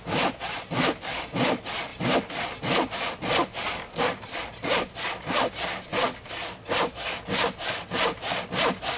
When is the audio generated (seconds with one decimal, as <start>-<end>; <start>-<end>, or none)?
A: none

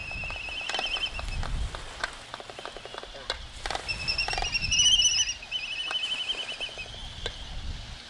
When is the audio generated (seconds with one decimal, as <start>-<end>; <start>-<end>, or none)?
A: none

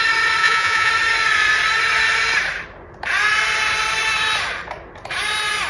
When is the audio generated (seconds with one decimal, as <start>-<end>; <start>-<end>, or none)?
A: 0.4-0.9

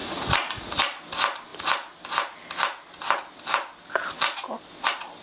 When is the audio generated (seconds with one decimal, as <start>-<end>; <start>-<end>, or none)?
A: 0.0-1.0

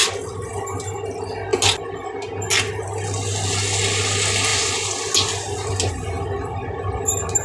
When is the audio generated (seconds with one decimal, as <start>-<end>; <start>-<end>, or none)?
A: 0.0-0.5